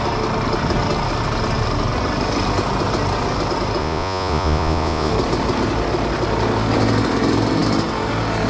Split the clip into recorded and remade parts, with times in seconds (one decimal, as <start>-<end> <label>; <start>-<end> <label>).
0.0-3.8 recorded; 3.8-5.1 remade; 5.1-8.5 recorded